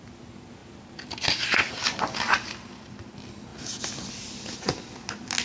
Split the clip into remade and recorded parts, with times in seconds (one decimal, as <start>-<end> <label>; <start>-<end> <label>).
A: 0.0-5.4 recorded